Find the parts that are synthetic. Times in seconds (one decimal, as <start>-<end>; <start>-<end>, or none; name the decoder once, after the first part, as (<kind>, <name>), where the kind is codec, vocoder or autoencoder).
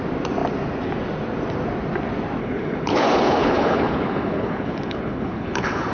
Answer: 2.4-5.9 (codec, HILCodec)